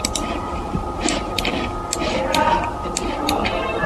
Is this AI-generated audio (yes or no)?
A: no